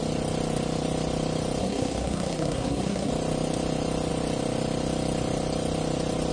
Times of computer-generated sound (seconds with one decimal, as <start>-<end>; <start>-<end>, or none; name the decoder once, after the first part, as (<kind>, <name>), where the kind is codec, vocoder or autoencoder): 1.6-3.1 (codec, SNAC)